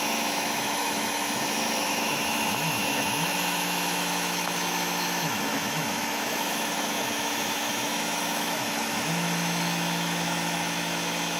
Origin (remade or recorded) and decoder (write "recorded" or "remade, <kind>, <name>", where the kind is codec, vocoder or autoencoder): remade, autoencoder, DAC-VAE